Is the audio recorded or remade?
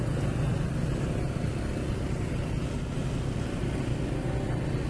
recorded